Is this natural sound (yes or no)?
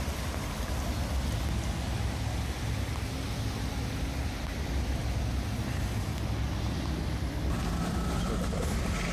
yes